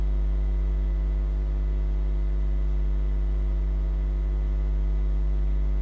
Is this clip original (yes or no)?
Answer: yes